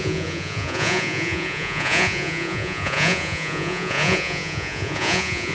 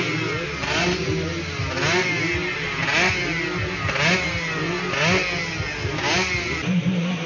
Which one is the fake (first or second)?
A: first